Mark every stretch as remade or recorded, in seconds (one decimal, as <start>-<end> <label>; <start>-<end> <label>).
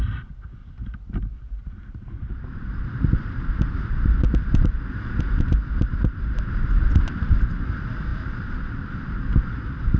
0.0-0.6 recorded; 0.6-5.2 remade; 5.2-10.0 recorded